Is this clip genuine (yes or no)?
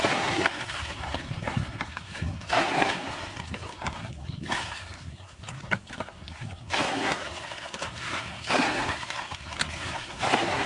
no